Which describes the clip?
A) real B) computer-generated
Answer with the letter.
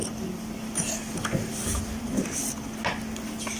A